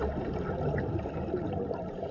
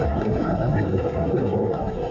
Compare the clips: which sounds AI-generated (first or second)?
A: second